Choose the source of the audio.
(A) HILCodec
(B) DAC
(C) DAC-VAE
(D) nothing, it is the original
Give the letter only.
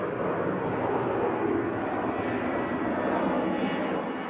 D